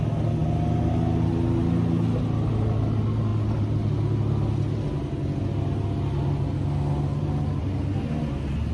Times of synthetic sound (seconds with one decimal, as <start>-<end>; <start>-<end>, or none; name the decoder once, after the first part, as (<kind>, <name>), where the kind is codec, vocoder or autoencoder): none